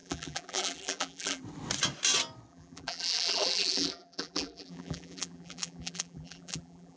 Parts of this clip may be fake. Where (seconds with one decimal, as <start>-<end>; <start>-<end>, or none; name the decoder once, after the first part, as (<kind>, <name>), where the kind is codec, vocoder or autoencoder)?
0.0-1.4 (vocoder, BigVGAN v2); 2.5-7.0